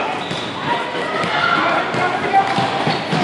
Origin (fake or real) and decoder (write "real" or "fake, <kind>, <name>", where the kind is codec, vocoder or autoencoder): real